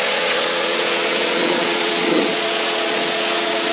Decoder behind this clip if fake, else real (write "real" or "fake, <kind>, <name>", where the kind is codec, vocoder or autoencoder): fake, vocoder, Vocos